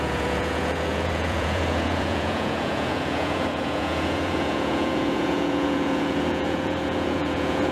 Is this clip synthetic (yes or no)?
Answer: yes